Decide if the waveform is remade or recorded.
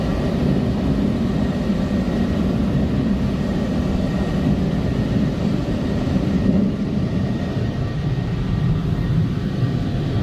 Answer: remade